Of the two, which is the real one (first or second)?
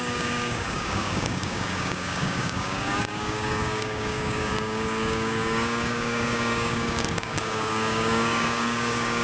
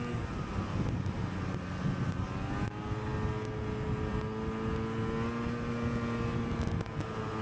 second